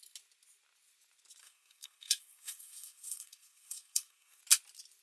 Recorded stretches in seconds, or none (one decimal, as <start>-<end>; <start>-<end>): 0.0-1.4; 4.4-5.0